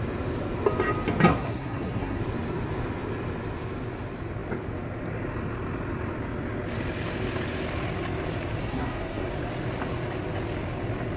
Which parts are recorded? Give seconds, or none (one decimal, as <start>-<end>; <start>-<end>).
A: 0.0-1.3; 2.2-8.6; 9.3-11.2